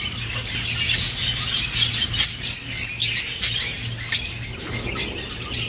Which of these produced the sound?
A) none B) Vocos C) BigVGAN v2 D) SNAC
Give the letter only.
A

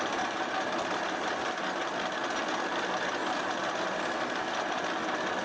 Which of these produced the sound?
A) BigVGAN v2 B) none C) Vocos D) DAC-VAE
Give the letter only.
B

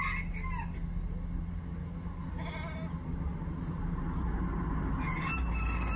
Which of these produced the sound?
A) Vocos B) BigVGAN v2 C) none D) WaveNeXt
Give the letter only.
C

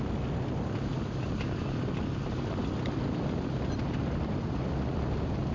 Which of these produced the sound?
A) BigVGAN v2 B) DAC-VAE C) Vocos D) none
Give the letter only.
D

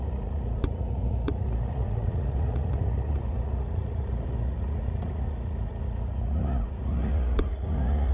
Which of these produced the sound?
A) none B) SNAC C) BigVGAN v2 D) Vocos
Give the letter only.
D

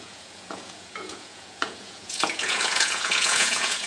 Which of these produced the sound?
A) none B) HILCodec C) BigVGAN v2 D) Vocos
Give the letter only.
D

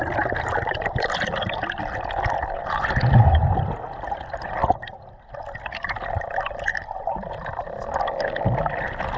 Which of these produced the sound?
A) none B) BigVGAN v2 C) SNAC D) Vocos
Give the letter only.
A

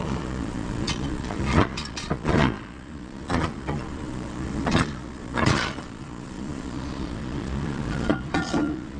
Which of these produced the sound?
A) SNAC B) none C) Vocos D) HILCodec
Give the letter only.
C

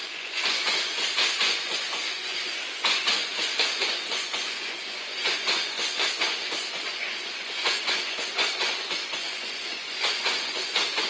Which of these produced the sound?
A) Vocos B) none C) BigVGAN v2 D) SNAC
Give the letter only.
A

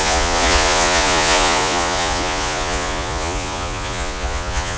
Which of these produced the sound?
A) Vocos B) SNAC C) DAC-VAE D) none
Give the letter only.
A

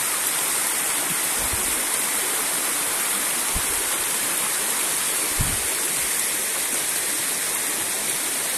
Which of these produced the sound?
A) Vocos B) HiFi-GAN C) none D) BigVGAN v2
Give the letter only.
C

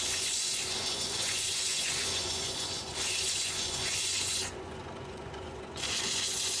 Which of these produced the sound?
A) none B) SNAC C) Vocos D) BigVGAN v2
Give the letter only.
C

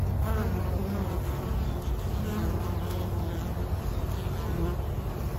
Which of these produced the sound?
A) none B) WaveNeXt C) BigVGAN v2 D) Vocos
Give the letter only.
A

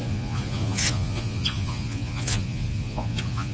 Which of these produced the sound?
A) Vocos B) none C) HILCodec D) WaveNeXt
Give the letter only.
A